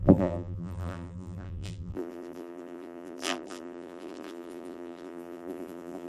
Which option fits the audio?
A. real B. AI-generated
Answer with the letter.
B